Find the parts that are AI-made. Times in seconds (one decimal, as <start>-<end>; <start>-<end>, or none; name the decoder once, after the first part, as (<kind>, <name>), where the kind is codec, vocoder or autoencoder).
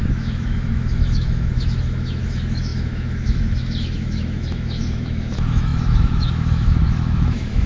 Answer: 0.0-7.7 (autoencoder, DAC-VAE)